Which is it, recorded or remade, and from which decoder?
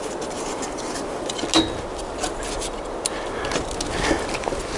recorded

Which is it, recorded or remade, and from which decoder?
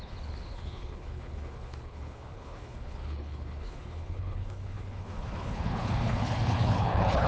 remade, codec, HILCodec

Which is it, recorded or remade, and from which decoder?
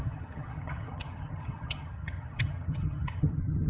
remade, vocoder, HiFi-GAN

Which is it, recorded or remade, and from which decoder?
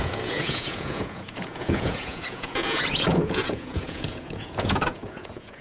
remade, vocoder, Vocos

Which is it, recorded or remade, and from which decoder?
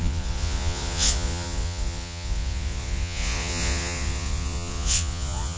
remade, vocoder, Vocos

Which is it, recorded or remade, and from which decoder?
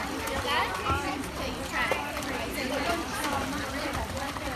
remade, vocoder, BigVGAN v2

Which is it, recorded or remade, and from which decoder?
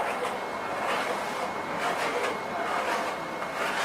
recorded